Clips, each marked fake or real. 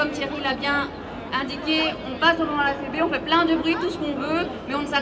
real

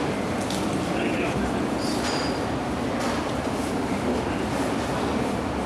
real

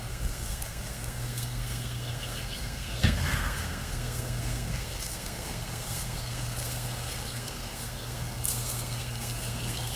fake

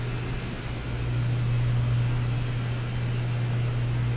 real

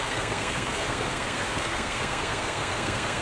fake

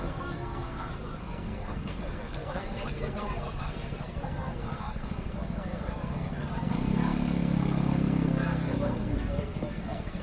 fake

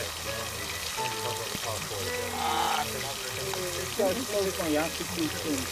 real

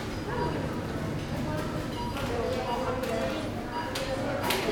real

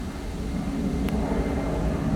real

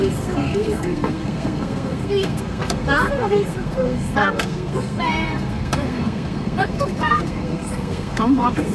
fake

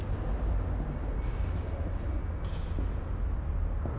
real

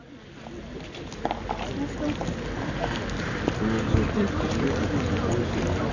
real